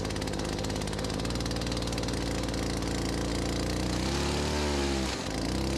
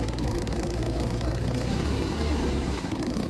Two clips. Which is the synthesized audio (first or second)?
second